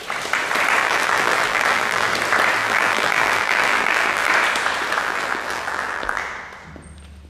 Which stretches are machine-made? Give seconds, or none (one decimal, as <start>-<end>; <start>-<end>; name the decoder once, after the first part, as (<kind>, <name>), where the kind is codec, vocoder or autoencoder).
0.8-2.1 (vocoder, BigVGAN v2); 2.6-4.3; 5.0-6.2